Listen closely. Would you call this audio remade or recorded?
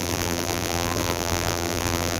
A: remade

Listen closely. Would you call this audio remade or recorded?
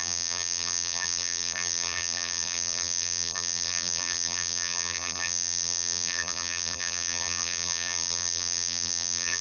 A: remade